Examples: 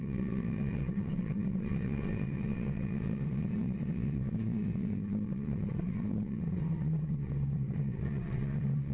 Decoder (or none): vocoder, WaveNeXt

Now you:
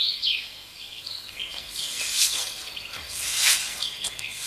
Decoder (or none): codec, SNAC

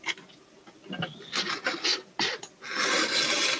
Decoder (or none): none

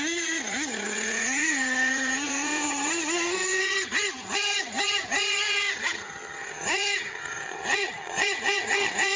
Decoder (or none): vocoder, HiFi-GAN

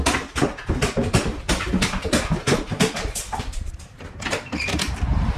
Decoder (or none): vocoder, BigVGAN v2